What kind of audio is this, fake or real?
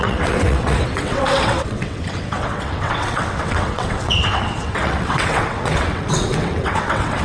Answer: fake